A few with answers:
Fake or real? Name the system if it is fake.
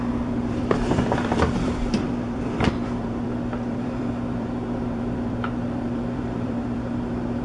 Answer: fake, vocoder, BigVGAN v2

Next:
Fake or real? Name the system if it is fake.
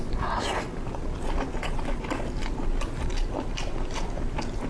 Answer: real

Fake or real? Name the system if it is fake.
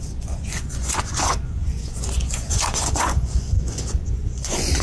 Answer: fake, vocoder, Vocos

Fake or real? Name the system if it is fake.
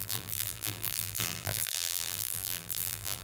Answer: fake, vocoder, BigVGAN v2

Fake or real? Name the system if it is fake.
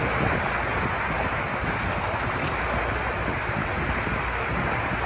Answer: real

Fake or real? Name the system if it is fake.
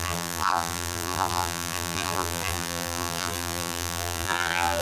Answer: fake, vocoder, BigVGAN v2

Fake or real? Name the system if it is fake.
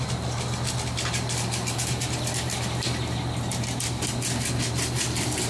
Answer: fake, vocoder, BigVGAN v2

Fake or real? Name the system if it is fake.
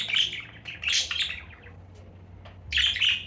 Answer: real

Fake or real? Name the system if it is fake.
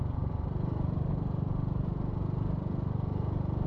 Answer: fake, vocoder, BigVGAN v2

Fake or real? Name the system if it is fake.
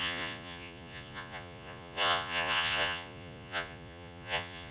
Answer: fake, vocoder, Vocos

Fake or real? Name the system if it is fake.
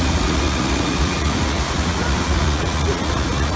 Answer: fake, vocoder, Vocos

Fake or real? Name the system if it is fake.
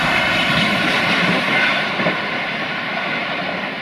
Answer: fake, vocoder, BigVGAN v2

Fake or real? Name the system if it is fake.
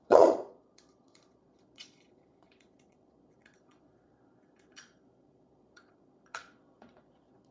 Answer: fake, vocoder, Vocos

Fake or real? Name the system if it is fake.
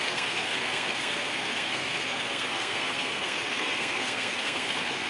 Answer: fake, codec, SNAC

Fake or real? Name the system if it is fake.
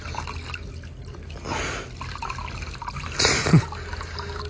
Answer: real